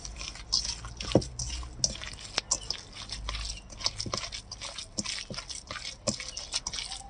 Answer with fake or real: real